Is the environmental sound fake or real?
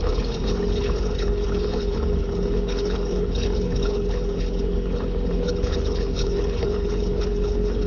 fake